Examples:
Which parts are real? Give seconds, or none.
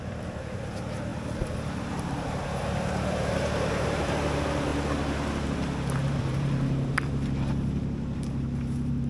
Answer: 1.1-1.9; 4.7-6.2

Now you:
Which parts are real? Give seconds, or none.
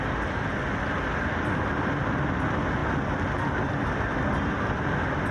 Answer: 0.0-5.3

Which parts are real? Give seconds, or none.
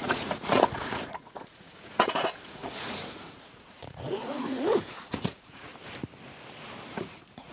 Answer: 5.7-6.9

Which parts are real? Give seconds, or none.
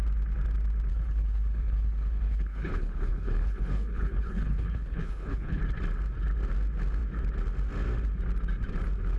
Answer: 0.0-0.9; 5.6-9.2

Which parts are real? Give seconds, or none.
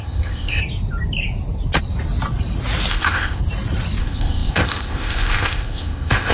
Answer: 0.6-2.9; 3.4-4.0